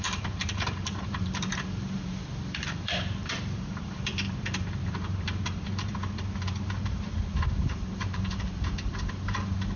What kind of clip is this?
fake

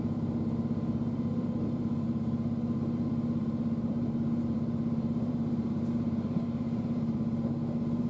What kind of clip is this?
fake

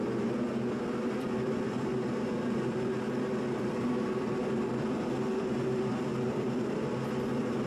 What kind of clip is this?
fake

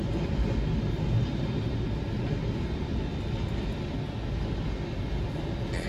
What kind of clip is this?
real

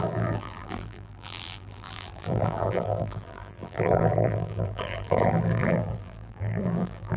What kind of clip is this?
fake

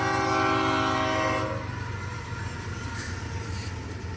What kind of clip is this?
real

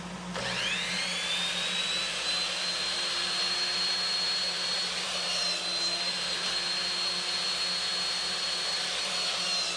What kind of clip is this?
real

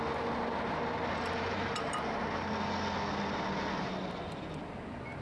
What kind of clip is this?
real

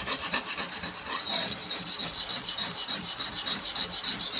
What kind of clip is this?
fake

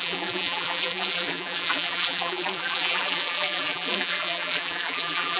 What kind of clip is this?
fake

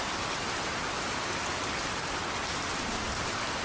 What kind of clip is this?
real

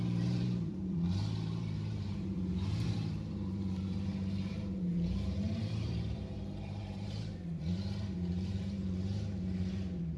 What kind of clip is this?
fake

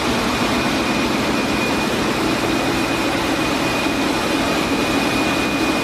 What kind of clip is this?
real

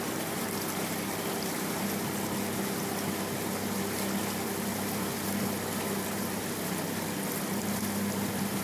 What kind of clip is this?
fake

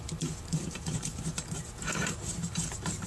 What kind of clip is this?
fake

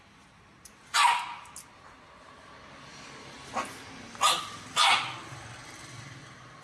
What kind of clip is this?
real